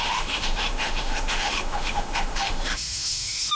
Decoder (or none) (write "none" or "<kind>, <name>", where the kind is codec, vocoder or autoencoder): autoencoder, DAC-VAE